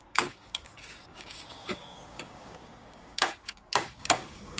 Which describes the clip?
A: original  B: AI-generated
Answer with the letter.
B